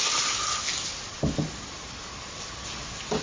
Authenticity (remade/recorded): recorded